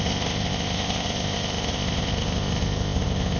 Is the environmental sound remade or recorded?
remade